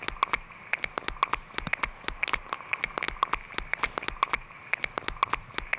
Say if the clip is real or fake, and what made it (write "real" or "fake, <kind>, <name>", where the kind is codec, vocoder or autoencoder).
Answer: real